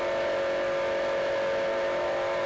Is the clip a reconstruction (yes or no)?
no